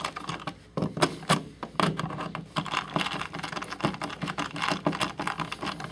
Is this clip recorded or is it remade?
recorded